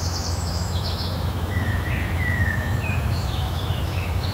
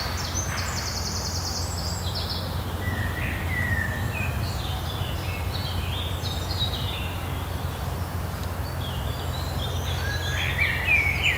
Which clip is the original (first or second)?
second